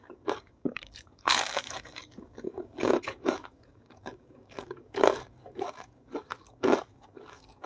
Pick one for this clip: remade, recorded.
remade